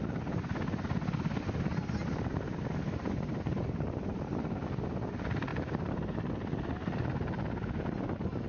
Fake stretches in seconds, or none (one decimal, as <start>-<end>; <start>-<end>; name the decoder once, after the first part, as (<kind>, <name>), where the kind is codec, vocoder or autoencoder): 2.0-4.6 (vocoder, BigVGAN v2); 5.5-6.3